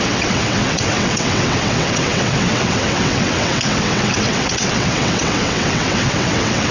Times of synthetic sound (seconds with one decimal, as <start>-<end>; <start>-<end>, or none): 0.0-6.7